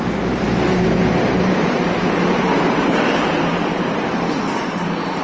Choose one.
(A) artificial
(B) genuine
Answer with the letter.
A